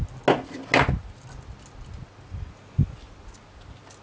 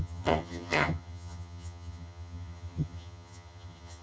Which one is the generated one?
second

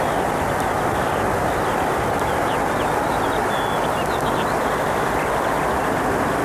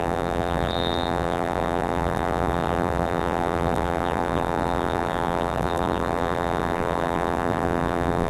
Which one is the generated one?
second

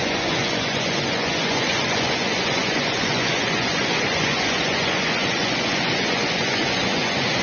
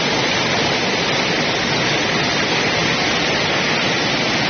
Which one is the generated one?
first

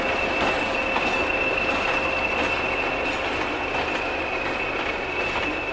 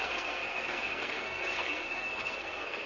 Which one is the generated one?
second